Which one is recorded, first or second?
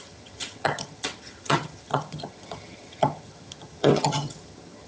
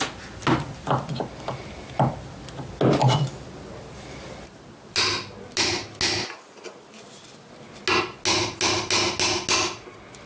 second